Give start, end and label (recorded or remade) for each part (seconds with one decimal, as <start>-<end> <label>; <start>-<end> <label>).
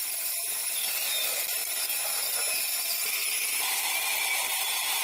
0.0-1.6 remade; 1.6-2.8 recorded; 2.8-5.0 remade